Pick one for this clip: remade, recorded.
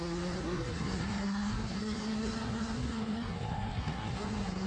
remade